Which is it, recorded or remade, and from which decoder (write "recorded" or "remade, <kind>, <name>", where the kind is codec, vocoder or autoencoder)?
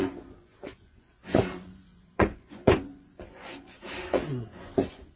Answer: remade, vocoder, Vocos